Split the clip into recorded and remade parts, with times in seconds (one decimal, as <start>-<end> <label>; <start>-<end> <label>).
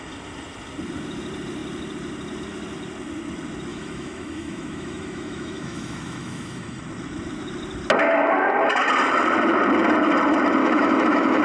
0.0-3.7 recorded; 3.7-6.8 remade; 6.8-10.6 recorded; 10.6-11.4 remade